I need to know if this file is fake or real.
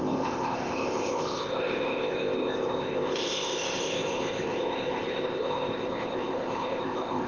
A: fake